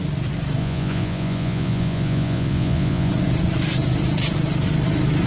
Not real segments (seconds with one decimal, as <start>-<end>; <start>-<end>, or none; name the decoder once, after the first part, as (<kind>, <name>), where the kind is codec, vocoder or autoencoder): 0.6-3.1 (vocoder, Vocos)